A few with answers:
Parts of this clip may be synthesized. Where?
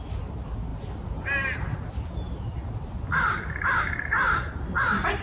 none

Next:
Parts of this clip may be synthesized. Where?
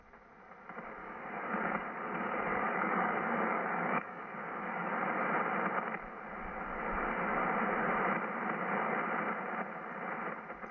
1.0-4.9 (codec, DAC)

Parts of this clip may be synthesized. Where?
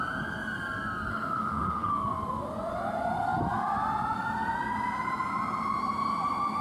1.1-1.9 (autoencoder, DAC-VAE)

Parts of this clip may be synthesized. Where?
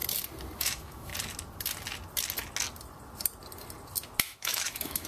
0.6-1.1 (autoencoder, DAC-VAE); 4.2-5.1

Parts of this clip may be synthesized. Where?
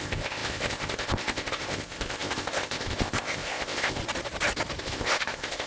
0.0-4.0 (codec, ZipCodec); 4.8-5.7